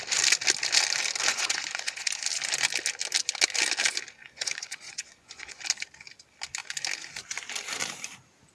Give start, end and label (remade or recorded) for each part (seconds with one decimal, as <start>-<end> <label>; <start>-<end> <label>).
0.0-1.3 recorded; 1.3-2.1 remade; 2.1-4.2 recorded; 4.2-5.6 remade; 5.6-8.5 recorded